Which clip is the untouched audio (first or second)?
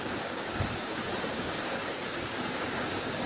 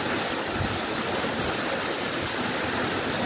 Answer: second